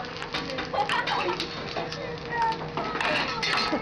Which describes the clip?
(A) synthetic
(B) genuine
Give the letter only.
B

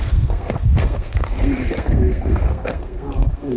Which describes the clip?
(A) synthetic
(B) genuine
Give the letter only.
A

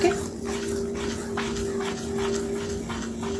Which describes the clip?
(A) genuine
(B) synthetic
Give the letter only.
A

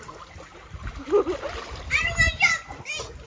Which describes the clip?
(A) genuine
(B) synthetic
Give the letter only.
A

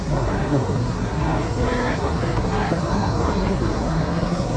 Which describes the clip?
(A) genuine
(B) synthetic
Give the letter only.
B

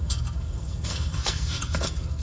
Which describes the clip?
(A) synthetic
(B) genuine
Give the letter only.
A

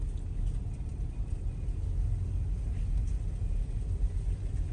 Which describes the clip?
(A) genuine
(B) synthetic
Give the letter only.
A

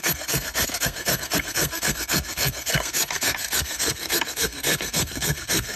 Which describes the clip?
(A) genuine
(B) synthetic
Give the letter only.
B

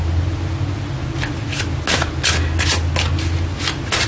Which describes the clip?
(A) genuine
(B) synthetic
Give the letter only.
A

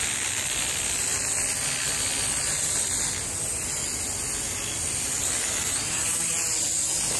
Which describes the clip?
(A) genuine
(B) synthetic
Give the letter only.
A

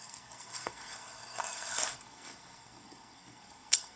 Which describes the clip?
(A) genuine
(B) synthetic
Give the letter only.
B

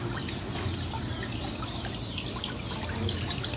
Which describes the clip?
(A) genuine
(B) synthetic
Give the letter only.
A